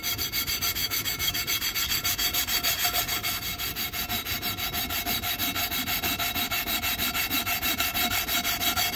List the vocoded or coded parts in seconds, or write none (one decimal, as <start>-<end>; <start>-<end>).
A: 0.8-1.4